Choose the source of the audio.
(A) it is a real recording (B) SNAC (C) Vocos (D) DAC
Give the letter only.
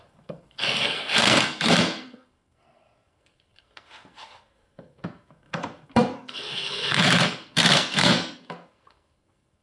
B